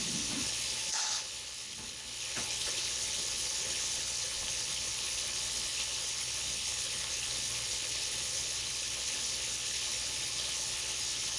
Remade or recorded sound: remade